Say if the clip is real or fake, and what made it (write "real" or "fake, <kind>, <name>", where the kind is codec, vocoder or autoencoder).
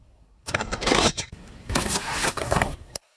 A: fake, codec, SNAC